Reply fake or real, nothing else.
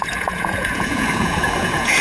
fake